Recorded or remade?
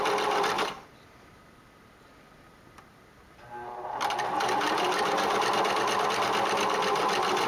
recorded